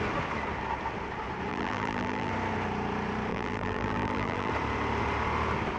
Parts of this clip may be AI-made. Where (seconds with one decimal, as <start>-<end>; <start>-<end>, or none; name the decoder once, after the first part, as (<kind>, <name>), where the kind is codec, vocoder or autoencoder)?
1.5-2.3 (vocoder, BigVGAN v2); 3.3-4.5